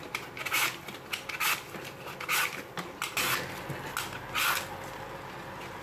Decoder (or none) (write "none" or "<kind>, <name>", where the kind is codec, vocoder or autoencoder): none